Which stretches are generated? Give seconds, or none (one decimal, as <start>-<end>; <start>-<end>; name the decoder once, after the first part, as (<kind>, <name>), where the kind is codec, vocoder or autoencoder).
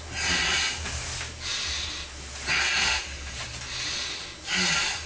none